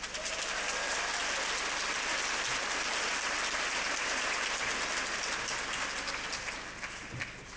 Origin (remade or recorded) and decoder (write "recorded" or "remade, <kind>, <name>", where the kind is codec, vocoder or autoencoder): recorded